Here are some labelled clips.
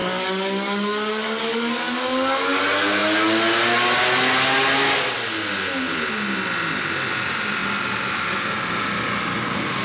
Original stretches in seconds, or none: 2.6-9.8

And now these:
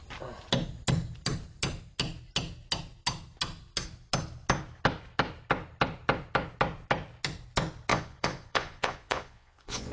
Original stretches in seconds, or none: 0.0-7.9